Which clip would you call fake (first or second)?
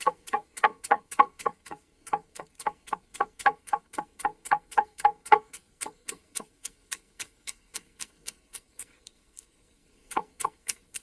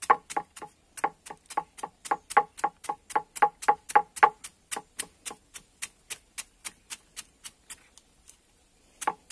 first